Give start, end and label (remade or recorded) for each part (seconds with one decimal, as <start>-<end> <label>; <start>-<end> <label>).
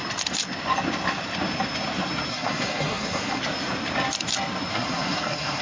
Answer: 0.0-2.3 recorded; 2.3-3.4 remade; 3.4-4.7 recorded; 4.7-5.6 remade